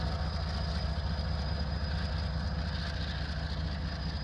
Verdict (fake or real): real